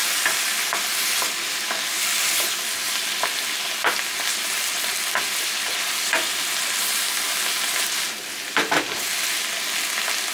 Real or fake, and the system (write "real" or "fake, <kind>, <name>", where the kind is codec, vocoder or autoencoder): real